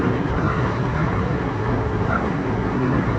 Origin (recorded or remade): remade